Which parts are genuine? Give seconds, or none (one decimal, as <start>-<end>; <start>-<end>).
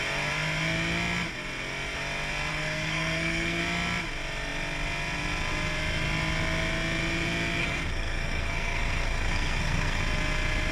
0.0-2.5; 3.6-7.6; 10.0-10.7